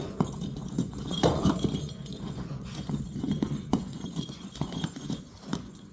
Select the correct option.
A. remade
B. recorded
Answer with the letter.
A